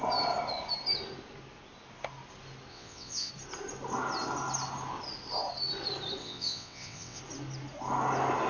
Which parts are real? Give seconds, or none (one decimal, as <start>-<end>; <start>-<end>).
0.0-2.7; 3.3-6.2; 7.2-8.5